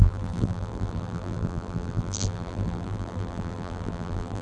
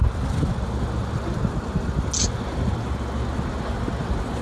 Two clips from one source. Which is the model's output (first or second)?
first